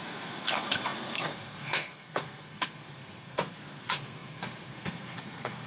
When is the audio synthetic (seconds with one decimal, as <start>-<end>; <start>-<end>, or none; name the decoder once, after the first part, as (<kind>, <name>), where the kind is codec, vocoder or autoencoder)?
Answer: 0.0-5.7 (codec, SNAC)